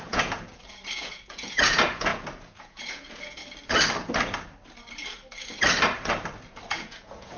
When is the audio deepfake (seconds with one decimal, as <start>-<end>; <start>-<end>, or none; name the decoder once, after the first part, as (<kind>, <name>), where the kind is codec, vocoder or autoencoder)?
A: 0.0-3.4 (vocoder, Vocos); 6.7-7.4